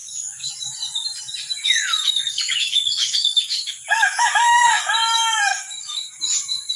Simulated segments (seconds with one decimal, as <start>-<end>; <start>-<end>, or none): 0.0-0.5; 1.6-4.8; 5.5-6.2